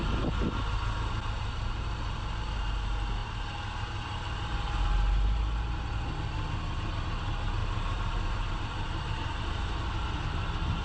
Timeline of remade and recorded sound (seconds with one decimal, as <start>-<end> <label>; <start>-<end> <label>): 0.0-7.6 recorded; 7.6-9.7 remade; 9.7-10.8 recorded